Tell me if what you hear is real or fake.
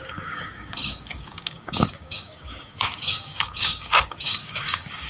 fake